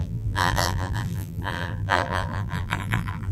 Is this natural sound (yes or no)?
no